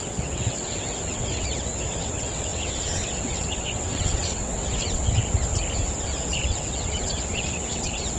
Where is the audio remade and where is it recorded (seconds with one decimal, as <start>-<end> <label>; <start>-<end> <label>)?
0.0-5.5 remade; 5.5-6.2 recorded; 6.2-8.2 remade